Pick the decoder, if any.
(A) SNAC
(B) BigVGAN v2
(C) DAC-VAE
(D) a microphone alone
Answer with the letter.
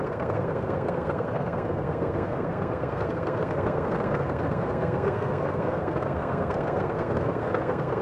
A